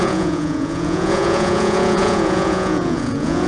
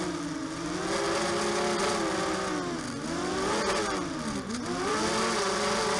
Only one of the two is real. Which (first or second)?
second